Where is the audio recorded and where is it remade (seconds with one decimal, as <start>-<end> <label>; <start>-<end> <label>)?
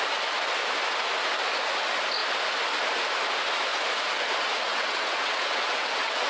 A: 0.0-4.7 recorded; 4.7-6.3 remade